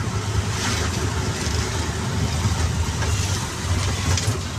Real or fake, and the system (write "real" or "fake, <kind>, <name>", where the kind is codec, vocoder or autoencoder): real